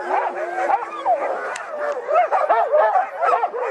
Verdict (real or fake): real